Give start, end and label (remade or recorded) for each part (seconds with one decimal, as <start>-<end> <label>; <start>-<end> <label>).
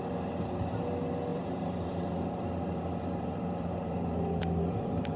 0.0-1.3 recorded; 1.3-4.4 remade; 4.4-5.2 recorded